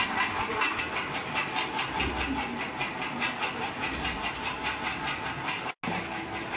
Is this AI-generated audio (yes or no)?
no